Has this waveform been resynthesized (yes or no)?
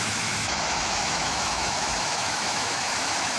yes